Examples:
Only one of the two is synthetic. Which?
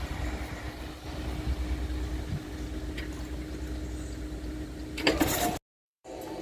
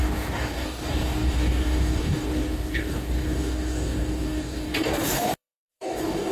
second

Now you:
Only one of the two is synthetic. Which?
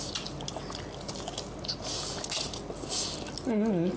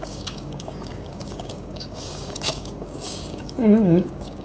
second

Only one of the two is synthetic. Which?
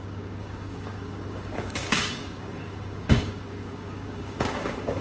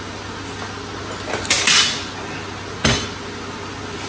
first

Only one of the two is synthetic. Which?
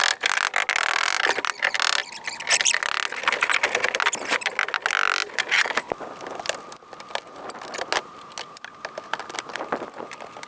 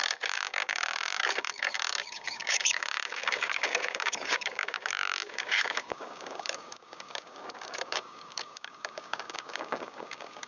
second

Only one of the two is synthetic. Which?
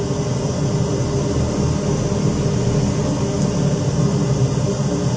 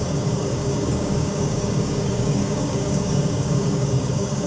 second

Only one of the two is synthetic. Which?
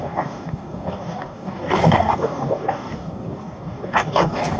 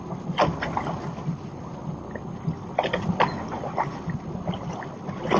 first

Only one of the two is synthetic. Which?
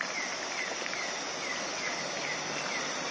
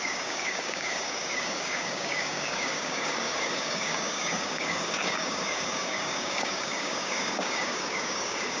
second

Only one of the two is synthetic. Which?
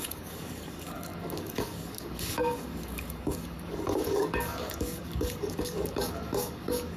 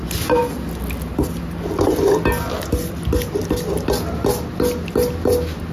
first